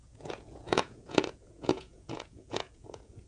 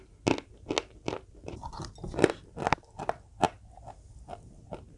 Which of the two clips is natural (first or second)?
second